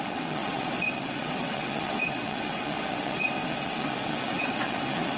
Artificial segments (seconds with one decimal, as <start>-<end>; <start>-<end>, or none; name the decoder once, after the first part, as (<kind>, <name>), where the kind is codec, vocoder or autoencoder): 0.0-5.2 (vocoder, WaveNeXt)